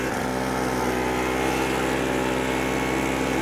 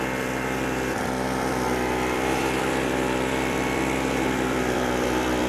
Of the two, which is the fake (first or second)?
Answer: second